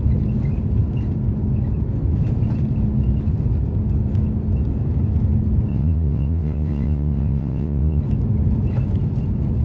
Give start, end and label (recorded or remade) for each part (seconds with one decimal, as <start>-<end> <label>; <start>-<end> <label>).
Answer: 0.0-5.7 recorded; 5.7-8.0 remade; 8.0-9.6 recorded